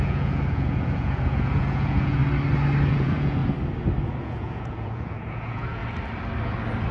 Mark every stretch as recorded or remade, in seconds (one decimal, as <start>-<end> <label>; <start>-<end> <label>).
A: 0.0-2.2 remade; 2.2-2.9 recorded; 2.9-3.4 remade; 3.4-4.2 recorded; 4.2-5.8 remade; 5.8-6.9 recorded